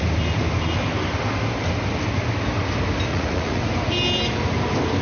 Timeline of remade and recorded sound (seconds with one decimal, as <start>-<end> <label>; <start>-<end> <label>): 0.0-3.1 recorded; 3.1-3.6 remade; 3.6-5.0 recorded